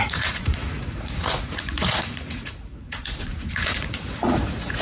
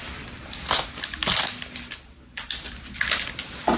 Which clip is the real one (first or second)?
second